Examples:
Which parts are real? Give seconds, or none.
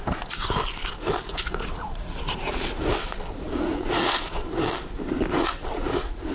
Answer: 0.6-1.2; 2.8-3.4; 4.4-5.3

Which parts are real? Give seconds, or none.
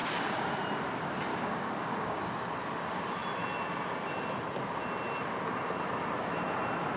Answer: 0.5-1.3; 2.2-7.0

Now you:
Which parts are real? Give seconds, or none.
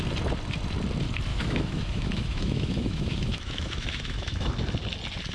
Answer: 0.0-1.3; 4.5-5.3